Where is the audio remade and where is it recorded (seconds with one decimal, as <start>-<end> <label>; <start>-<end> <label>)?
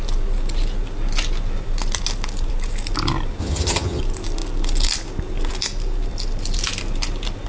0.0-3.4 recorded; 3.4-4.0 remade; 4.0-7.5 recorded